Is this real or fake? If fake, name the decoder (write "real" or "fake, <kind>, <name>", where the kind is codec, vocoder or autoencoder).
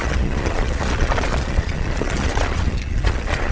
fake, vocoder, Vocos